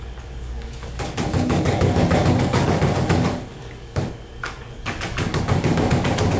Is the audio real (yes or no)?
no